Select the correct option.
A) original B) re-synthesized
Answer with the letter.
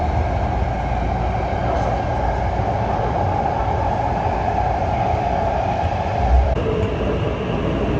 A